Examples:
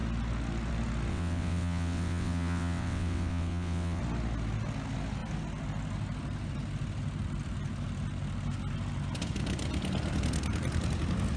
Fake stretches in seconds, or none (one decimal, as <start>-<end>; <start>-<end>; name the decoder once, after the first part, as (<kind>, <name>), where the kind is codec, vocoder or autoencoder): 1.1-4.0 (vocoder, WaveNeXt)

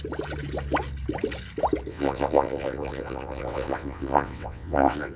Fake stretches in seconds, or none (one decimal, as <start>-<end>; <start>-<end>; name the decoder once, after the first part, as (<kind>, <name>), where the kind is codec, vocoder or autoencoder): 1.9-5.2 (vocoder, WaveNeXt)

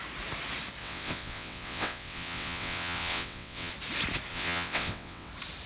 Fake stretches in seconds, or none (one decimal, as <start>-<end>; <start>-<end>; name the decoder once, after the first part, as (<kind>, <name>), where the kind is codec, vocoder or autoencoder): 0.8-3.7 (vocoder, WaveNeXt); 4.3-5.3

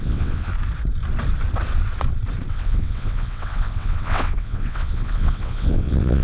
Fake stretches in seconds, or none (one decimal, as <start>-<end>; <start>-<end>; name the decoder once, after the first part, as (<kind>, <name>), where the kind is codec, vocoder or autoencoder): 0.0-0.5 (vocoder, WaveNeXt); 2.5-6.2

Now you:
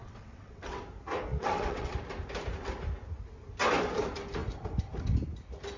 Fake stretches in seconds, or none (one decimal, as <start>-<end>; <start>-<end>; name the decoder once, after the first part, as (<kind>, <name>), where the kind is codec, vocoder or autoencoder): 0.0-0.8 (vocoder, WaveNeXt); 1.3-1.9

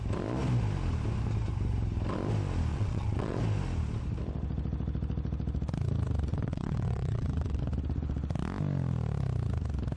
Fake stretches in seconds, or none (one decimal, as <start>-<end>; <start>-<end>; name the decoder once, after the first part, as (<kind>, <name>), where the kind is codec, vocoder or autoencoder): 2.7-3.4 (vocoder, WaveNeXt); 6.3-7.6